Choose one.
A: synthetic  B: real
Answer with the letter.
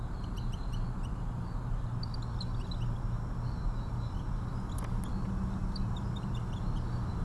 B